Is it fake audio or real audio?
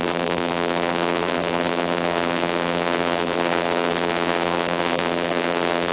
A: fake